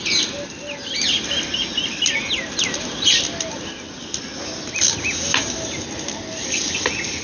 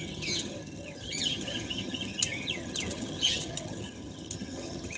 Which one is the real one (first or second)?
first